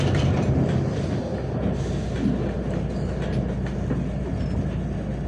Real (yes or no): yes